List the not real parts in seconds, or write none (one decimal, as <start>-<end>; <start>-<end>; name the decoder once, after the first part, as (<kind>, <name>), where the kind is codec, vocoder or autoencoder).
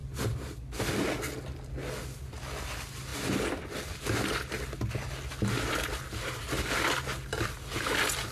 none